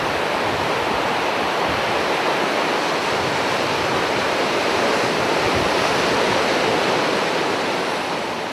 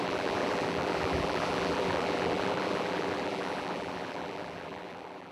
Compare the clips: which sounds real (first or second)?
first